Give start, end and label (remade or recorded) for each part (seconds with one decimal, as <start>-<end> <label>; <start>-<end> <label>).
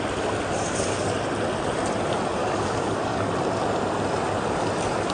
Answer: 0.0-2.4 recorded; 2.4-3.3 remade; 3.3-5.1 recorded